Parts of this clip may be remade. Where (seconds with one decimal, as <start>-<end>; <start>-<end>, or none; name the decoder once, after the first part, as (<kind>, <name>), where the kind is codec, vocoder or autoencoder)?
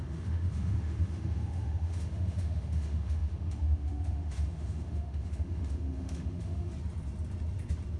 0.0-6.7 (autoencoder, DAC-VAE)